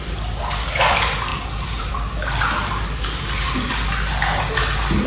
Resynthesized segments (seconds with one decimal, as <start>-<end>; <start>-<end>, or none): 1.3-1.9